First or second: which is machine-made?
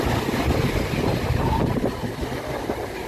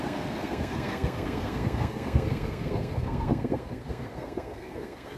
second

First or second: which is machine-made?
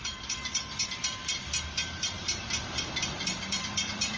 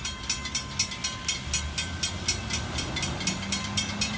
first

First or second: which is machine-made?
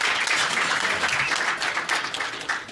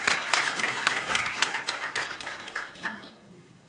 second